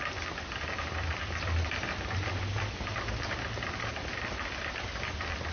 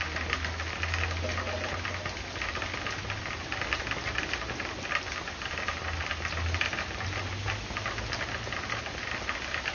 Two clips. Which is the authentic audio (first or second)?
second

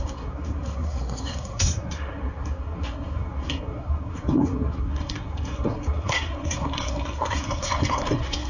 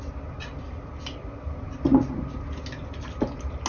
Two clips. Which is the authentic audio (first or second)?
second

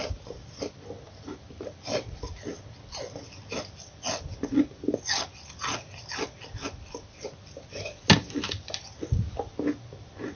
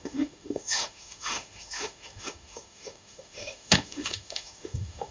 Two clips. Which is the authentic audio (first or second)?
first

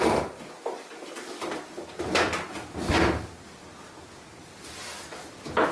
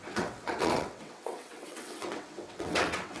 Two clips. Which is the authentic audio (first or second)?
first